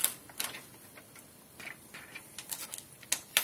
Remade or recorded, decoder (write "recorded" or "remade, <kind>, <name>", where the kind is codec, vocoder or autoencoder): recorded